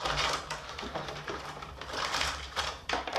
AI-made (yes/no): yes